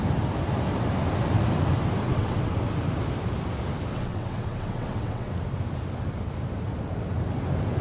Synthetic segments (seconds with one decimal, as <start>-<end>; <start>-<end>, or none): 2.0-2.5; 3.9-5.3

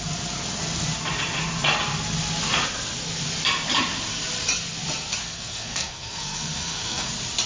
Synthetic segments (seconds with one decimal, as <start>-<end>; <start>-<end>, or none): 5.2-7.1

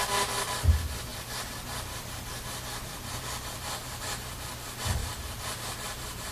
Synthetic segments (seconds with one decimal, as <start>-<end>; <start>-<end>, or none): 1.1-4.1; 5.0-6.3

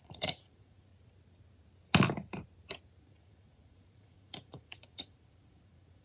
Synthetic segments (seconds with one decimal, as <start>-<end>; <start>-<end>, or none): 0.0-0.9; 3.0-6.0

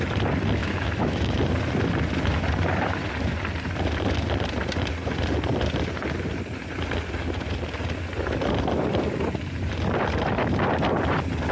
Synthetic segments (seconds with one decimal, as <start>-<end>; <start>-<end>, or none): 0.6-1.4

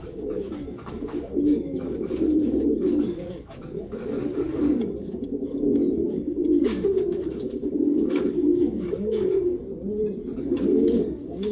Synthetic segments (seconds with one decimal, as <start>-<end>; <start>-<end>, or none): 0.0-9.5; 10.4-11.5

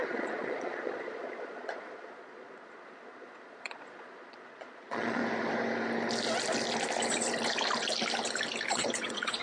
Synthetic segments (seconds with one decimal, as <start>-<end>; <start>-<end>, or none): 0.0-5.2; 8.7-9.4